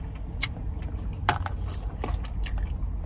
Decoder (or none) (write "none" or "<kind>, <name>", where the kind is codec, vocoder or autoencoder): none